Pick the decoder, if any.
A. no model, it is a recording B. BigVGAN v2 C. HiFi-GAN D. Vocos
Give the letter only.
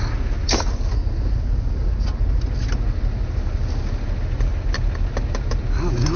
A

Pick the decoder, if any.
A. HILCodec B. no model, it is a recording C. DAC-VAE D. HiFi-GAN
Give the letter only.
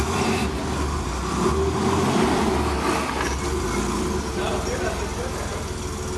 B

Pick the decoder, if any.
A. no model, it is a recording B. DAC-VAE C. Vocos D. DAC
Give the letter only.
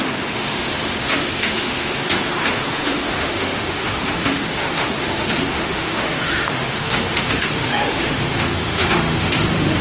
B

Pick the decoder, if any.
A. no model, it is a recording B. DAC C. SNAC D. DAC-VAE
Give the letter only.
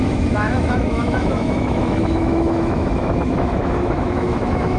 D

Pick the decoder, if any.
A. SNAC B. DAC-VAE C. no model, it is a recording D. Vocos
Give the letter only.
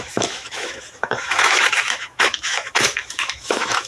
B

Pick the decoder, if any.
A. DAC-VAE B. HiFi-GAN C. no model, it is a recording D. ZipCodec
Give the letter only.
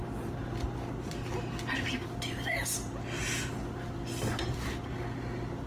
C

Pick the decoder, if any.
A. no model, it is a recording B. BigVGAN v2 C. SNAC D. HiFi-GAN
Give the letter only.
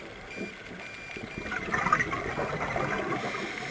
A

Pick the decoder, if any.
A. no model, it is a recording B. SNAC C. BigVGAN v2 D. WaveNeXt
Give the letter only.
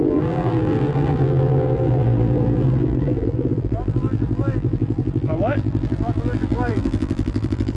C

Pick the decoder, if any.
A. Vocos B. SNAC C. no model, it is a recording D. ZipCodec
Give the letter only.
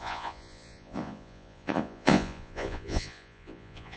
A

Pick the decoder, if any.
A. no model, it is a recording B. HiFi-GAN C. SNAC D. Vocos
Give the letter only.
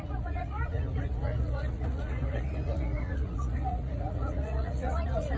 D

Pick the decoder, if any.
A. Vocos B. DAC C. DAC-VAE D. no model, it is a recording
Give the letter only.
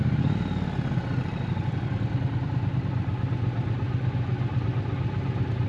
D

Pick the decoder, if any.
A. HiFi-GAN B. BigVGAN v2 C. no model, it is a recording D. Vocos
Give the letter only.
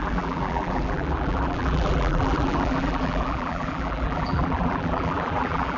B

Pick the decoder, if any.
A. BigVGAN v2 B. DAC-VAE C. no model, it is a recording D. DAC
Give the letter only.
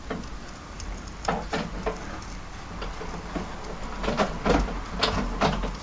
C